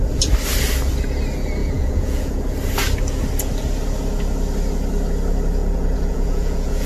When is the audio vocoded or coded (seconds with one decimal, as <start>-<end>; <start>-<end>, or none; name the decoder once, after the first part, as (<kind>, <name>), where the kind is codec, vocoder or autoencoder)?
1.6-2.4 (vocoder, Vocos); 5.6-6.9

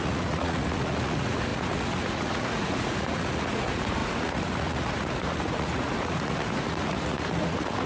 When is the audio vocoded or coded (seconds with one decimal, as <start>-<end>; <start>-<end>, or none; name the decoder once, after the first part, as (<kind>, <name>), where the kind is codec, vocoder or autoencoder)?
0.0-7.9 (vocoder, Vocos)

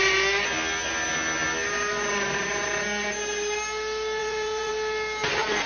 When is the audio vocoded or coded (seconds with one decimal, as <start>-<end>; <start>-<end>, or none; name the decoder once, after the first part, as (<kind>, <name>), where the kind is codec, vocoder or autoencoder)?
4.2-4.7 (vocoder, Vocos)

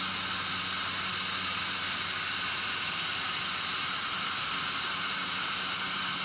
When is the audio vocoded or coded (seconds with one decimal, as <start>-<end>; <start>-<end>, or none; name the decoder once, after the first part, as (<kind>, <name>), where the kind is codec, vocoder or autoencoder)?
none

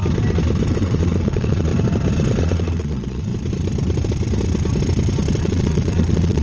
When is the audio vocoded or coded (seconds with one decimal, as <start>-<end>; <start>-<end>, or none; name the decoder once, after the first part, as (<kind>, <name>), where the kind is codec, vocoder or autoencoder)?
0.7-1.7 (vocoder, Vocos); 2.4-3.3; 5.4-6.4

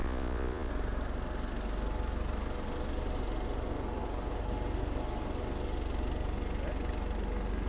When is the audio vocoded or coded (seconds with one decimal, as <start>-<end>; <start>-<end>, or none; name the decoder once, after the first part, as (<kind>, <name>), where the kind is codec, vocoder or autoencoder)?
0.0-0.7 (vocoder, Vocos)